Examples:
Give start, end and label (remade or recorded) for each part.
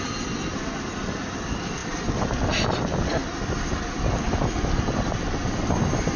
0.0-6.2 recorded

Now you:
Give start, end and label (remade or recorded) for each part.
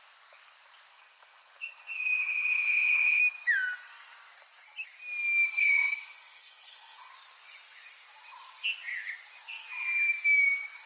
0.0-0.9 recorded; 0.9-3.2 remade; 3.2-5.6 recorded; 5.6-7.1 remade; 7.1-10.9 recorded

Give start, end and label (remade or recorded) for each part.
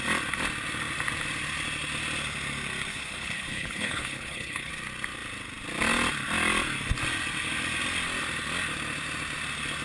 0.0-2.9 recorded; 2.9-4.7 remade; 4.7-9.8 recorded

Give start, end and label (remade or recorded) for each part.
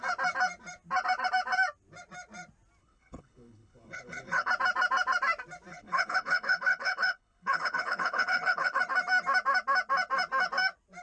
0.0-2.8 recorded; 2.8-4.5 remade; 4.5-5.7 recorded; 5.7-8.8 remade; 8.8-11.0 recorded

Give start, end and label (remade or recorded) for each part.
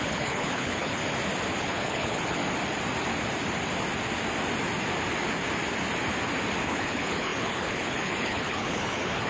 0.0-1.0 remade; 1.0-1.6 recorded; 1.6-2.4 remade; 2.4-6.7 recorded; 6.7-9.3 remade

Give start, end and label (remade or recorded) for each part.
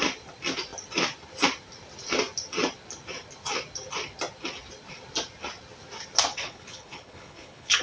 0.0-6.3 recorded; 6.3-7.8 remade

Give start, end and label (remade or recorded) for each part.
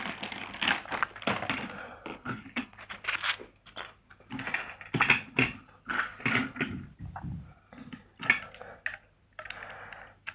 0.0-2.1 recorded; 2.1-2.8 remade; 2.8-10.3 recorded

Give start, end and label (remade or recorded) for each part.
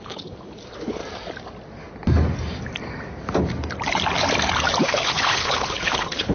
0.0-1.0 remade; 1.0-4.8 recorded; 4.8-6.3 remade